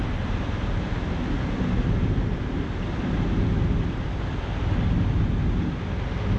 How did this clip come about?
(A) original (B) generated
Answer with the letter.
A